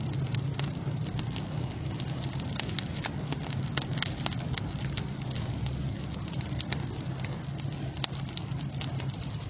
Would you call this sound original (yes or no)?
yes